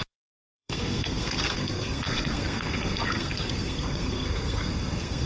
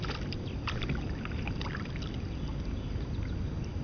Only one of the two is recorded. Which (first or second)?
second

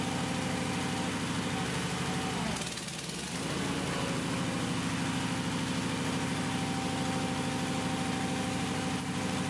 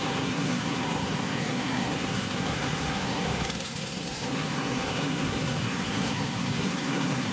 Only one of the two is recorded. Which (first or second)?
first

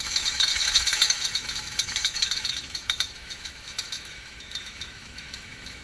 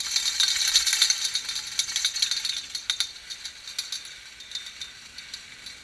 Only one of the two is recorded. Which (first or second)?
second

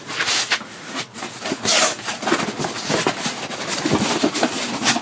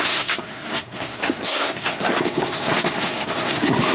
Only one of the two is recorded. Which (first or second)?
first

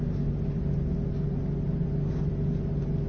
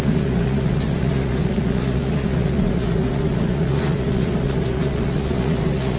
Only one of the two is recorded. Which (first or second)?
first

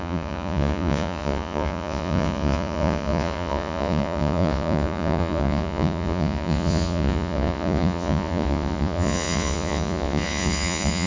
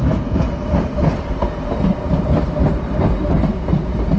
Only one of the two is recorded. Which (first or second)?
second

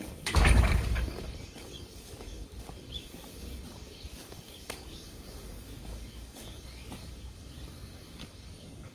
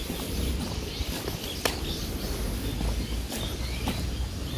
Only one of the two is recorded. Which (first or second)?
second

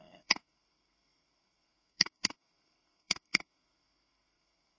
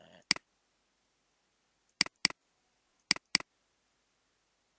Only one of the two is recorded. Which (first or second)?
second